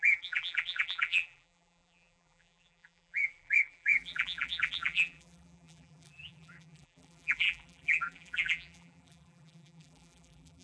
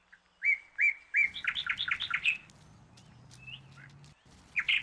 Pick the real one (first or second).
second